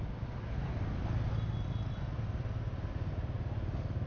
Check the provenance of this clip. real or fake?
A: real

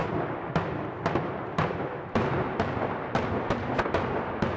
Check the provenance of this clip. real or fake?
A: real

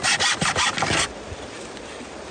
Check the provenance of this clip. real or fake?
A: real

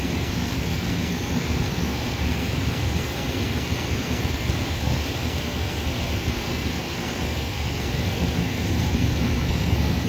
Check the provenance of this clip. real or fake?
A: fake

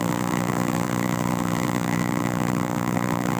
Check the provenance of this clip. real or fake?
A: fake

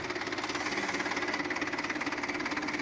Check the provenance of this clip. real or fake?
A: real